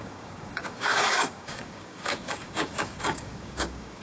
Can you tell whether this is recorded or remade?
remade